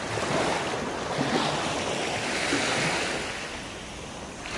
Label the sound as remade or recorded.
recorded